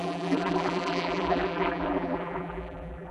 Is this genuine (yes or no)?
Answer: no